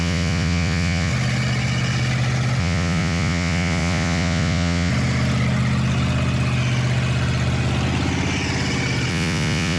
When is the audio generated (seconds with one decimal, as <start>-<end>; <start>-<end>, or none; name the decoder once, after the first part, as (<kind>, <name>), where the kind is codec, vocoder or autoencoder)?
0.0-1.1 (vocoder, Vocos); 2.6-4.9; 9.1-9.8